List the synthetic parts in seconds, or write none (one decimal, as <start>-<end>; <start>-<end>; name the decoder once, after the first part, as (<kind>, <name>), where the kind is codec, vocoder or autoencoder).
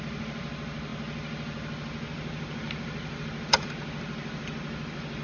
none